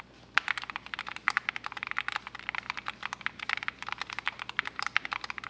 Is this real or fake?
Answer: real